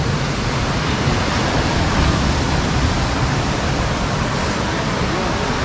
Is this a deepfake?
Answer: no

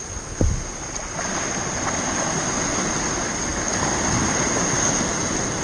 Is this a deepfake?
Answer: no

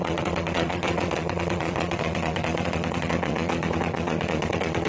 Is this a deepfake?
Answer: yes